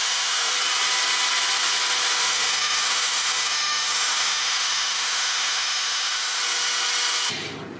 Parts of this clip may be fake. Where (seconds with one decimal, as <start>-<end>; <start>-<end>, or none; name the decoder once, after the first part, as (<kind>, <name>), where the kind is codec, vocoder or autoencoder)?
0.0-0.5 (autoencoder, DAC-VAE); 2.2-6.4